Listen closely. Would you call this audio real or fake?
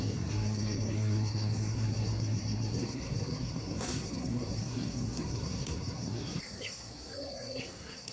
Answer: fake